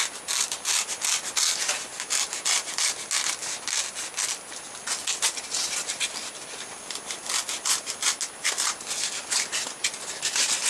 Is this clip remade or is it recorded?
recorded